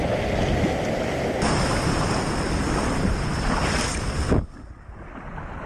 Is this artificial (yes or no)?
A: no